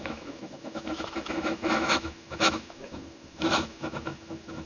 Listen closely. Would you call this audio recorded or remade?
remade